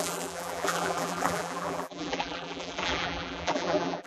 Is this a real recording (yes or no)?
no